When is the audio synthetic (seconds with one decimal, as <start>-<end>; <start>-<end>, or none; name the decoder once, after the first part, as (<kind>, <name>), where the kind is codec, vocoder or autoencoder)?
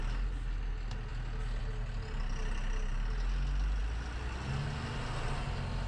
none